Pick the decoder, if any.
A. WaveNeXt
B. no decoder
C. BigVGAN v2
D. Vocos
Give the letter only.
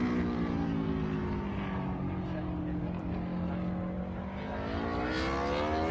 B